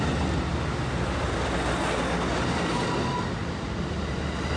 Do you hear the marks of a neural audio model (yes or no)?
no